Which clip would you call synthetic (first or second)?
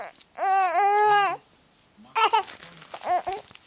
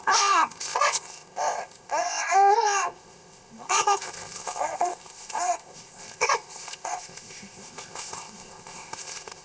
second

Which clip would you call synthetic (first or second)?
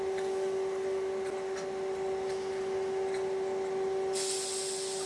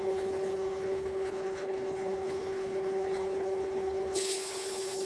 second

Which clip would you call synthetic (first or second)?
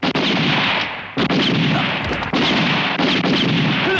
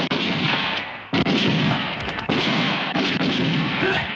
second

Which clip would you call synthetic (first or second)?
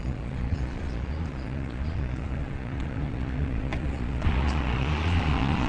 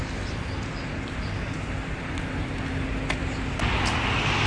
first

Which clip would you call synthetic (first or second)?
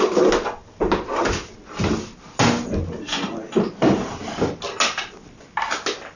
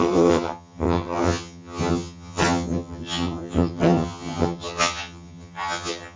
second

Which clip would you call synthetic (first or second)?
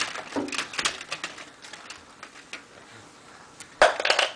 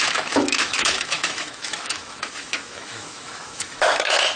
second